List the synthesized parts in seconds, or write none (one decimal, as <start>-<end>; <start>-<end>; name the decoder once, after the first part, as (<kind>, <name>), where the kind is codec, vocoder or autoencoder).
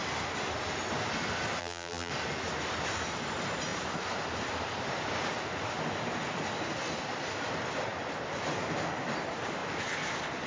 1.6-2.1 (vocoder, BigVGAN v2)